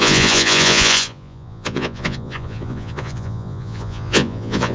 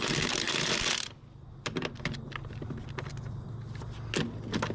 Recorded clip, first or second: second